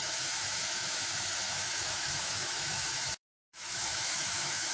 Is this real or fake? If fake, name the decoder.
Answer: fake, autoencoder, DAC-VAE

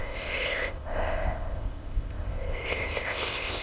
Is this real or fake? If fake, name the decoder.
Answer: fake, codec, ZipCodec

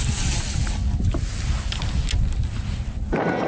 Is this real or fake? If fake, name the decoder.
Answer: real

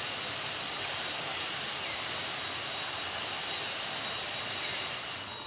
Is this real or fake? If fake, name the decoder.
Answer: fake, vocoder, BigVGAN v2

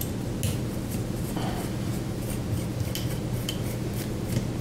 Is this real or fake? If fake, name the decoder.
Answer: real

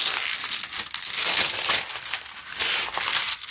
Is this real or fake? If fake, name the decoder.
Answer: real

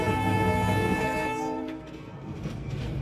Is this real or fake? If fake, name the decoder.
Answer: fake, codec, SNAC